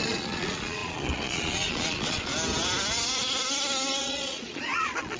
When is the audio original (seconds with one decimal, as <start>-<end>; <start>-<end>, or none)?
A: 2.3-4.0